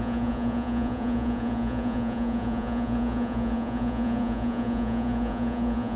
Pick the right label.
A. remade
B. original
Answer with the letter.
A